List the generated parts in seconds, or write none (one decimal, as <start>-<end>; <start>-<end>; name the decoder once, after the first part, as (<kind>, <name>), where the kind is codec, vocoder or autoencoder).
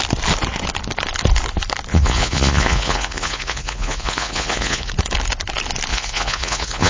1.9-4.9 (vocoder, Vocos); 5.9-6.9